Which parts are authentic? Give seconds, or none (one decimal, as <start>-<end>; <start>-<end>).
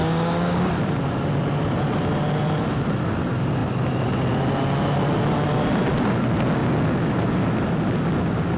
0.7-8.6